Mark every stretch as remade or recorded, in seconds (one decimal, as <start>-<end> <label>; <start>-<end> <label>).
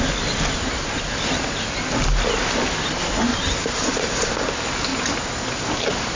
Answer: 0.0-6.2 recorded